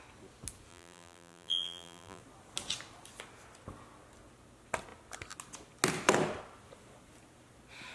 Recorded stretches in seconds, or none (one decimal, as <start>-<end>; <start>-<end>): 0.0-0.7; 2.2-7.9